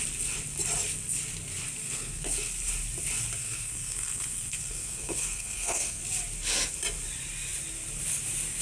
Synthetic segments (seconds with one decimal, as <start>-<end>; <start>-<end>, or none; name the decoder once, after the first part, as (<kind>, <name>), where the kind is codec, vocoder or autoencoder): 1.8-2.5 (codec, SNAC); 3.4-6.0